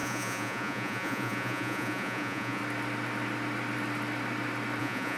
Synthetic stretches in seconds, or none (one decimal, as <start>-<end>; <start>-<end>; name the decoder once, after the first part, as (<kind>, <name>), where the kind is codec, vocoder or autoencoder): 0.0-2.6 (vocoder, Vocos); 4.8-5.2